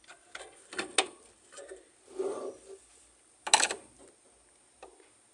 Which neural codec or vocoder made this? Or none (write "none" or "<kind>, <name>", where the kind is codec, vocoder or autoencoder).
none